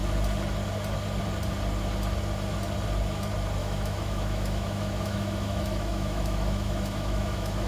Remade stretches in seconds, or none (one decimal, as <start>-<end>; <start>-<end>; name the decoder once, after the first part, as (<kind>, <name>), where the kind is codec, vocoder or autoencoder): 3.6-7.7 (autoencoder, DAC-VAE)